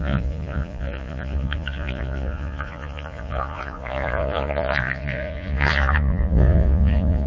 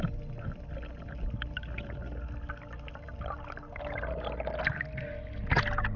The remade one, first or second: first